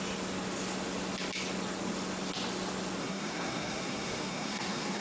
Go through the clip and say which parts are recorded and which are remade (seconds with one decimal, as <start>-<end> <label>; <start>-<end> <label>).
0.0-3.0 recorded; 3.0-5.0 remade